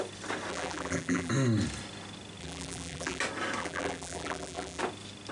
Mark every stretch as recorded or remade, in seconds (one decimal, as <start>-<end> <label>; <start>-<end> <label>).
0.0-0.5 recorded; 0.5-1.3 remade; 1.3-2.4 recorded; 2.4-3.2 remade; 3.2-3.6 recorded; 3.6-4.8 remade; 4.8-5.3 recorded